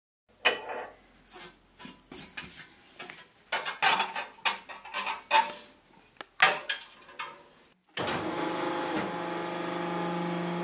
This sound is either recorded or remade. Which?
recorded